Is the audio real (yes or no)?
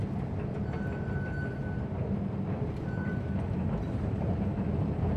yes